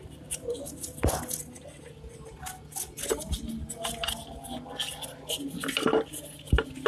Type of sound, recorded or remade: recorded